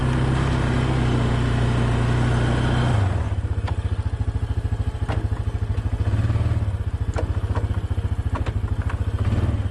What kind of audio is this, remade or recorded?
recorded